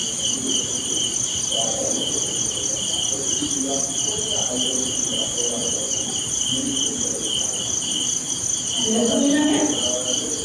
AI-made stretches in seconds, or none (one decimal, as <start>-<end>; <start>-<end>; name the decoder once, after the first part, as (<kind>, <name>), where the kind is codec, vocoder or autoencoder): 5.6-6.1 (vocoder, Vocos)